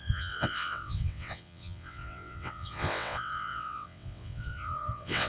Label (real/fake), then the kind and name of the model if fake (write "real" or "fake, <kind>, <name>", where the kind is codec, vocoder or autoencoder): fake, vocoder, WaveNeXt